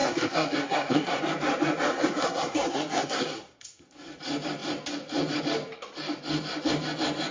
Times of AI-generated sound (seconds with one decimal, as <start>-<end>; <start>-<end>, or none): 0.0-1.2; 1.9-3.9